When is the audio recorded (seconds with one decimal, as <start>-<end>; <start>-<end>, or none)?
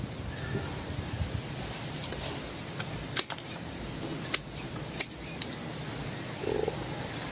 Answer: 0.0-7.3